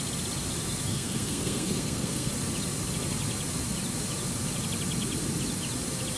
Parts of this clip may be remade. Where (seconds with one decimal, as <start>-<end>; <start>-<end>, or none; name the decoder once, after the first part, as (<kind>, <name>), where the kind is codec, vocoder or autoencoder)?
0.9-2.3 (codec, SNAC)